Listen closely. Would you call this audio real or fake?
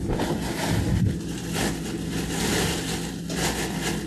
real